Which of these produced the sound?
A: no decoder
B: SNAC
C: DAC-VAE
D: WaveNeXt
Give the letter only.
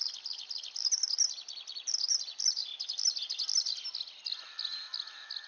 A